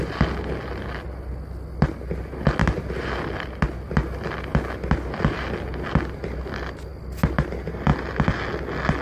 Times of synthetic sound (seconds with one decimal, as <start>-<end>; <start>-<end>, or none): none